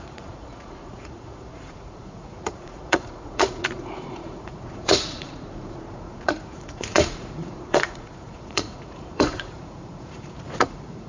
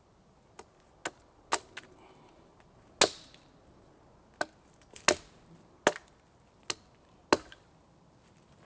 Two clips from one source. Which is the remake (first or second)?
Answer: first